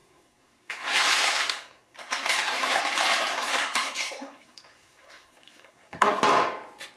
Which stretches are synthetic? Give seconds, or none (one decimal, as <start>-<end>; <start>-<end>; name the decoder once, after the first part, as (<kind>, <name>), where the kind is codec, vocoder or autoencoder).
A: 0.0-2.8 (codec, SNAC); 3.3-6.2